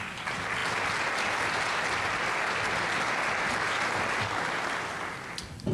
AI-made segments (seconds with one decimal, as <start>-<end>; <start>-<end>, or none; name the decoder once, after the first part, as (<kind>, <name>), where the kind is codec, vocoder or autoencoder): none